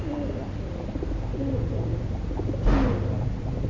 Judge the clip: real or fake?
real